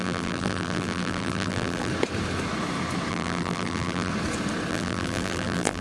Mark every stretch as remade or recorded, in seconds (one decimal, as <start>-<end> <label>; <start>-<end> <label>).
0.0-1.9 remade; 1.9-3.1 recorded; 3.1-4.1 remade; 4.1-4.7 recorded; 4.7-5.8 remade